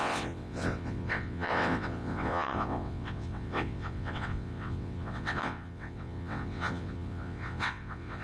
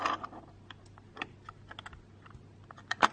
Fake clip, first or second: first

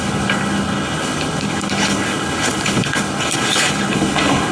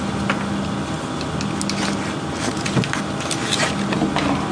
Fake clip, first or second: first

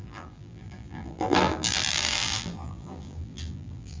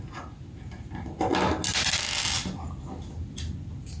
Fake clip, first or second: first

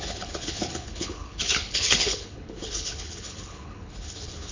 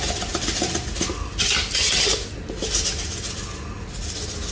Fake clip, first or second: first